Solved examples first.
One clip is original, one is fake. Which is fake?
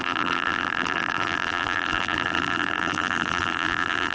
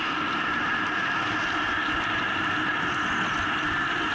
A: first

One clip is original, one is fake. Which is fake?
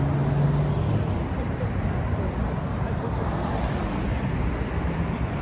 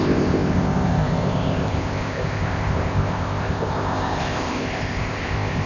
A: second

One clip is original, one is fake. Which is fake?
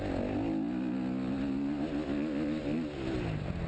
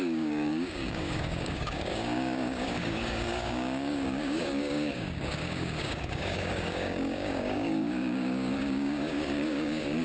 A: second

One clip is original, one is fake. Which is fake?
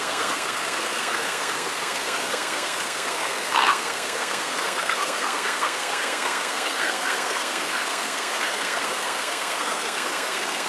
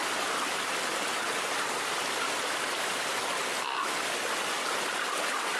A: first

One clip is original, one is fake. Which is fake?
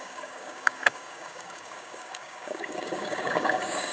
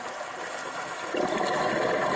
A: first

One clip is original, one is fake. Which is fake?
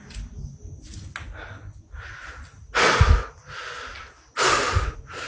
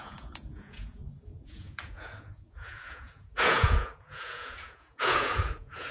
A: second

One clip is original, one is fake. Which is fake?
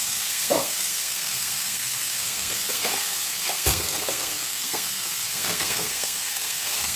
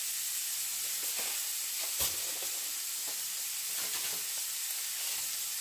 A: first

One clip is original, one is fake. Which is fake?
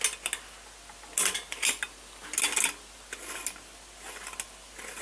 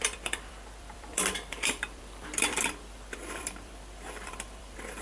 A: second